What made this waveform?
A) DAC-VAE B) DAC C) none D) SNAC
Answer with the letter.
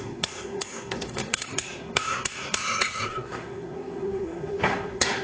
D